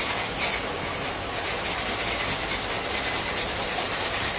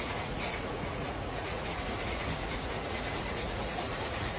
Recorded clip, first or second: first